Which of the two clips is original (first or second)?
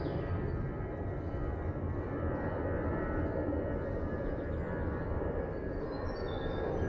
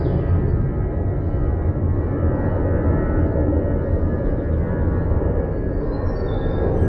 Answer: second